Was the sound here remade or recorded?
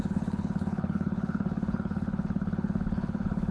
remade